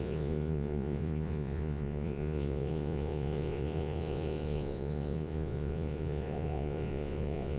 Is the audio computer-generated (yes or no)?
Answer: yes